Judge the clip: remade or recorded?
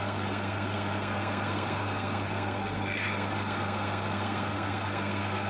remade